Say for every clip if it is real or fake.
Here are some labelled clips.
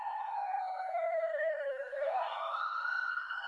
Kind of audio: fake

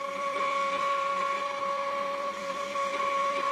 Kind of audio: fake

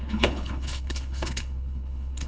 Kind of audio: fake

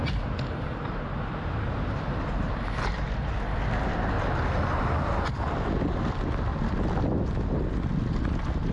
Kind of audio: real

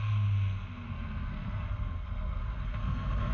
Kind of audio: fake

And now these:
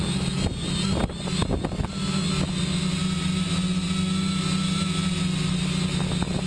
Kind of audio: real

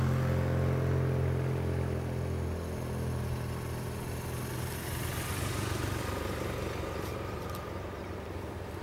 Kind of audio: real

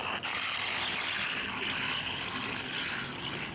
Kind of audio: real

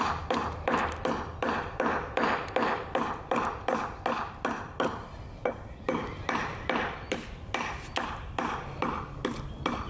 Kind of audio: real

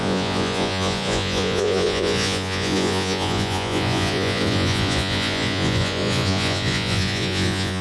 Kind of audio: fake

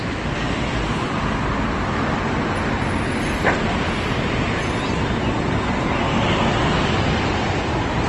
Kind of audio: real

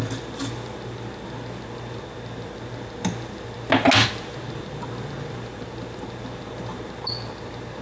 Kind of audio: real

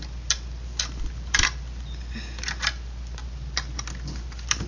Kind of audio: fake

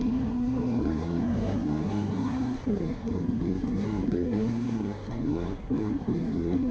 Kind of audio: fake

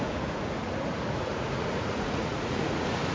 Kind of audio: fake